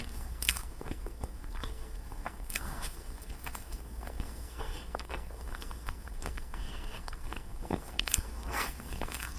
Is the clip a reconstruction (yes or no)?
yes